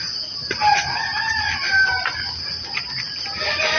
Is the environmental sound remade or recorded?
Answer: recorded